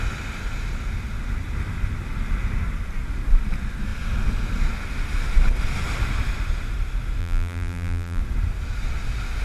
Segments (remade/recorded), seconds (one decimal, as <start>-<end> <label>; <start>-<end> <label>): 0.0-7.2 recorded; 7.2-8.2 remade; 8.2-9.4 recorded